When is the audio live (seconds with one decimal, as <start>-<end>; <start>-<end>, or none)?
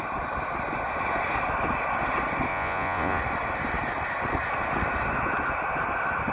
0.0-2.5; 3.2-6.3